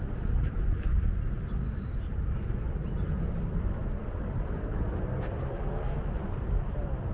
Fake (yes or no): yes